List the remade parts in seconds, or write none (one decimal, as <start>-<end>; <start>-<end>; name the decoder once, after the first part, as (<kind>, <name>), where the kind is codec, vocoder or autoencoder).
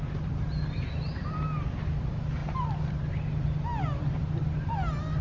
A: none